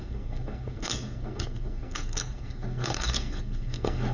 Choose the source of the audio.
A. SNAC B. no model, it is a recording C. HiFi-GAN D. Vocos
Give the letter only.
A